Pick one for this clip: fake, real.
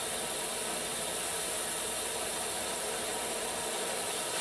real